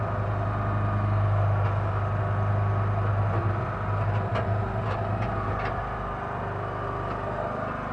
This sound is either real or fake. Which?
real